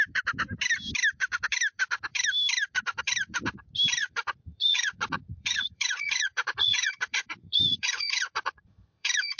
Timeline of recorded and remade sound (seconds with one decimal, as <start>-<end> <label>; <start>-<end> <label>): 0.0-4.0 recorded; 4.0-9.4 remade